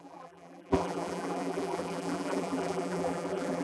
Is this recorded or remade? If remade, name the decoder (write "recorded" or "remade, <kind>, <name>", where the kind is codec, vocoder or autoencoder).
remade, vocoder, BigVGAN v2